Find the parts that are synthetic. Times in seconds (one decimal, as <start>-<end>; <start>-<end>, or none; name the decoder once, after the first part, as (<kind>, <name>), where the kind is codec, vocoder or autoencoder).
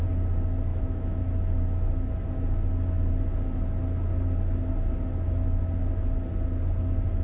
0.7-1.2 (autoencoder, DAC-VAE)